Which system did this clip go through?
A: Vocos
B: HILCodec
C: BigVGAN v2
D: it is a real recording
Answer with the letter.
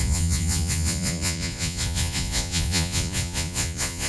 A